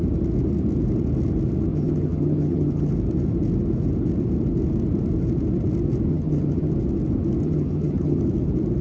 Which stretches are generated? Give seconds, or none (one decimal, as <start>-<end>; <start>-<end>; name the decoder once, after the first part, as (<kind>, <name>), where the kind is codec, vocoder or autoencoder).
1.7-2.9 (vocoder, HiFi-GAN); 6.1-6.7; 7.4-8.2